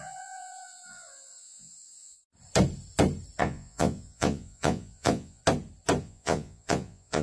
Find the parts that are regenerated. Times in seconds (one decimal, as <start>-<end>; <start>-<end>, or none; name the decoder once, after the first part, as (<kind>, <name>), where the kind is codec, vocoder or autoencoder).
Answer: 0.0-2.2 (vocoder, Vocos); 3.4-5.4; 6.0-7.2